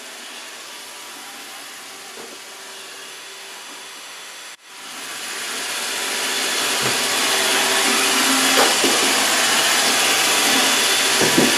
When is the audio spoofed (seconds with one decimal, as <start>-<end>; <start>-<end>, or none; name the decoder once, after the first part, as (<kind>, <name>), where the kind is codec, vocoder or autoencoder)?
3.1-4.7 (autoencoder, DAC-VAE)